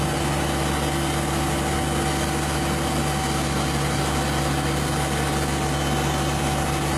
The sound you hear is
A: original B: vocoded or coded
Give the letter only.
A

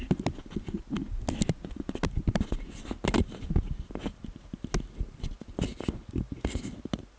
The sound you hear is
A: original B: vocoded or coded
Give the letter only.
A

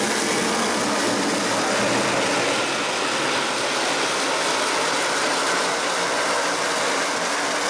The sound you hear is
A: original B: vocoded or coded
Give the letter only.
A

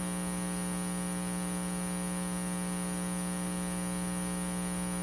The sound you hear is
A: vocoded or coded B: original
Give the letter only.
B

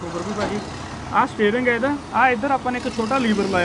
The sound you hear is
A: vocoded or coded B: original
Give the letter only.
B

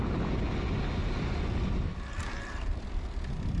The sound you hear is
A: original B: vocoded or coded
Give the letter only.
A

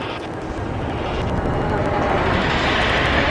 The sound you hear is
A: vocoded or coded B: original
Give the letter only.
B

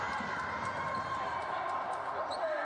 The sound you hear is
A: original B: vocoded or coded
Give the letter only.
A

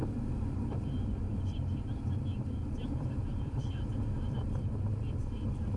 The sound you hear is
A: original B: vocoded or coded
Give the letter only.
B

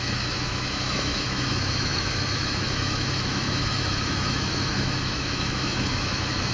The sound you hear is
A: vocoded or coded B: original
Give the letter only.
A